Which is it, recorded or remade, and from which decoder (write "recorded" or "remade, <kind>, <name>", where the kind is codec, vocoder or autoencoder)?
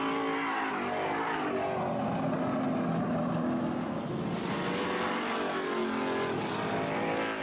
recorded